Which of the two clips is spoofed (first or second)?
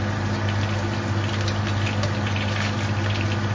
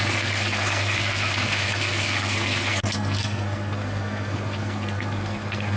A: second